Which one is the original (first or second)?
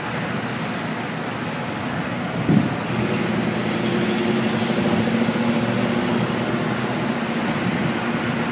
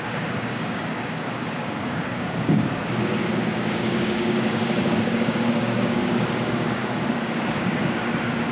first